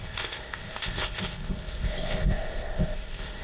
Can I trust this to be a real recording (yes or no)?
no